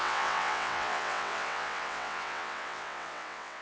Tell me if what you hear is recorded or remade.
remade